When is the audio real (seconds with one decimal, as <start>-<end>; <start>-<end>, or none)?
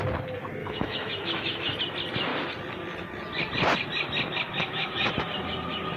0.0-0.6; 1.8-4.6; 5.1-6.0